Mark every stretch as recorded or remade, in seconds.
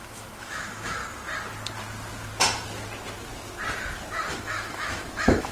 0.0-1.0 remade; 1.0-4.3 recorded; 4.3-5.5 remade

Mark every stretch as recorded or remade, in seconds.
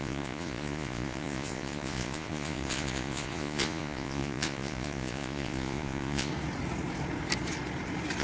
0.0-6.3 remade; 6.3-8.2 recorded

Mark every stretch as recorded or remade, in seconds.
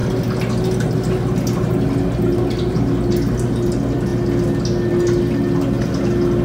0.0-6.4 recorded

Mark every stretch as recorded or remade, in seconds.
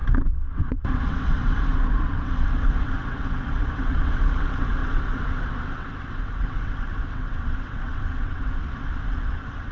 0.0-9.7 remade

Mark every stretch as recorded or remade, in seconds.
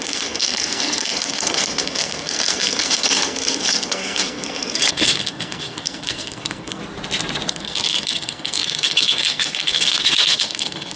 0.0-6.8 remade; 6.8-7.5 recorded; 7.5-11.0 remade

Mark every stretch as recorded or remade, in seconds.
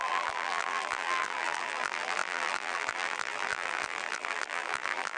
0.0-5.2 remade